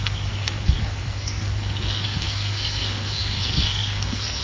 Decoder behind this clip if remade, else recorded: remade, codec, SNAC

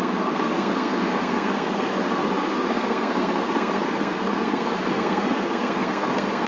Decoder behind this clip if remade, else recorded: remade, codec, SNAC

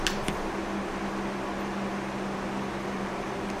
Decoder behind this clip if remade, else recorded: recorded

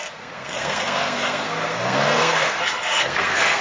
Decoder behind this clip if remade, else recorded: remade, codec, SNAC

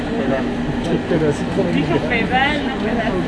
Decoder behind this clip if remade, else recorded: recorded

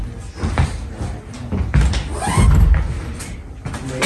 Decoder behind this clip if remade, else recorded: recorded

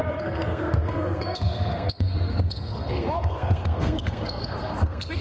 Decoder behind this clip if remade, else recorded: remade, codec, SNAC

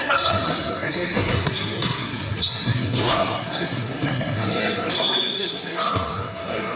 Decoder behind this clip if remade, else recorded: remade, codec, SNAC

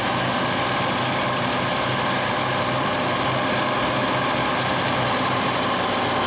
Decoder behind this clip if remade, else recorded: recorded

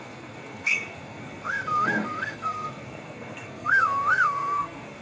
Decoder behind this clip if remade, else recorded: remade, codec, SNAC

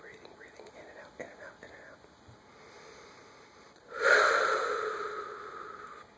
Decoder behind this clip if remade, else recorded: recorded